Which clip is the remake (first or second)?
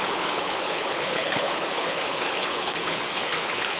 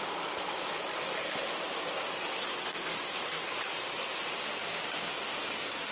first